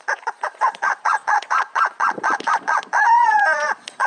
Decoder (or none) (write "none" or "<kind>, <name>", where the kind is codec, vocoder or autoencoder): vocoder, Vocos